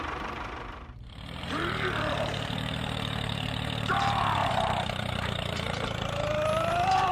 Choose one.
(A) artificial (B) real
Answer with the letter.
A